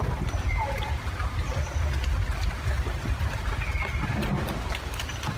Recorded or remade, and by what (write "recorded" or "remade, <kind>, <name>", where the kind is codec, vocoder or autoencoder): recorded